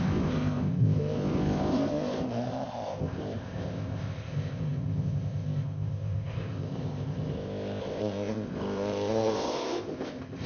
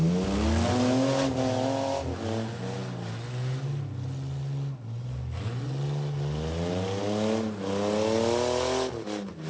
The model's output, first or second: first